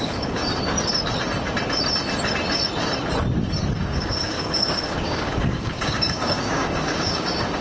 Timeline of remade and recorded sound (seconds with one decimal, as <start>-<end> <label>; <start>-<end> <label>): 0.0-0.4 remade; 0.4-3.8 recorded; 3.8-7.6 remade